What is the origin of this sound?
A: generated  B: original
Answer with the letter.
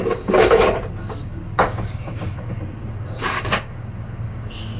A